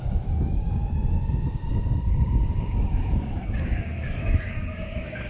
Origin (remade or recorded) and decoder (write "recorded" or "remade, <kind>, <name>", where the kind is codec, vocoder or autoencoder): remade, codec, DAC